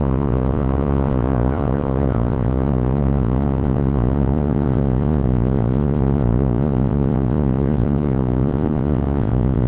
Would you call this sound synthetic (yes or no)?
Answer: yes